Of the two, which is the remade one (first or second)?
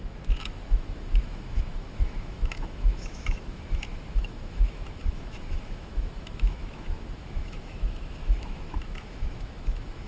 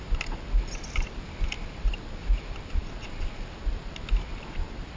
first